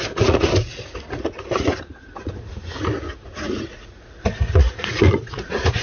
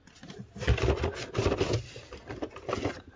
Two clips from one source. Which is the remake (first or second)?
first